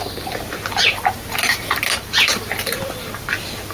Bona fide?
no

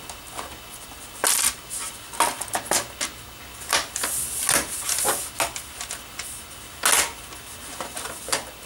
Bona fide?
yes